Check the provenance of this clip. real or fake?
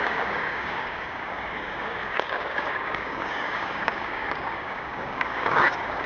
fake